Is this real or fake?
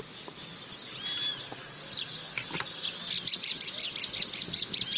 real